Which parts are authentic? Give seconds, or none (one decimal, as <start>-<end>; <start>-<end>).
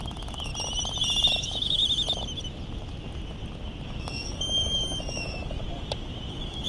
0.5-1.4; 1.8-4.0; 5.6-6.3